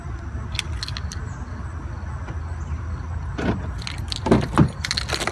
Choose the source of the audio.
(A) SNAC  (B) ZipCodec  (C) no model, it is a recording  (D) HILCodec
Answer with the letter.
C